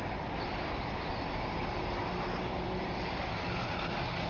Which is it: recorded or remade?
recorded